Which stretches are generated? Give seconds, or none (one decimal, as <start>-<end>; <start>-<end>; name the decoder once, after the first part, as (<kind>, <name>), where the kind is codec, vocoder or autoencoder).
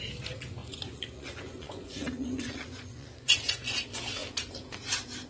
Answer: 0.6-3.8 (vocoder, Vocos)